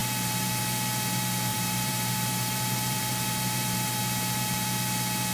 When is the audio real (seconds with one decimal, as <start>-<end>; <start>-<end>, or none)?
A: 0.6-1.5; 4.0-5.3